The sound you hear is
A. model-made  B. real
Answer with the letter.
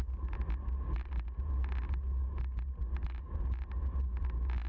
B